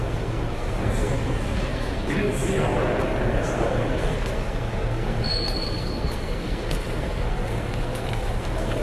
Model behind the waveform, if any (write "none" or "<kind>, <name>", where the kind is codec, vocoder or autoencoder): codec, SNAC